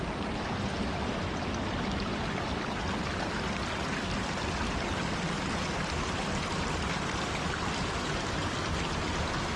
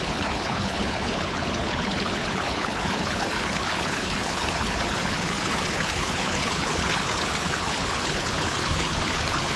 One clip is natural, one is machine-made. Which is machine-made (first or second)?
second